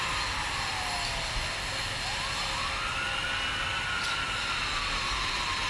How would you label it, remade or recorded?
recorded